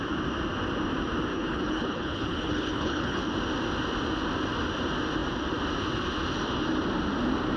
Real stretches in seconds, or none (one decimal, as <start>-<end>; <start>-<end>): 0.0-1.3; 3.2-7.6